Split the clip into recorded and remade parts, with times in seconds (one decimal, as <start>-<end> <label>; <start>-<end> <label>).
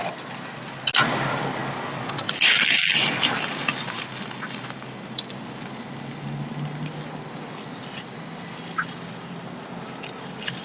0.0-10.6 recorded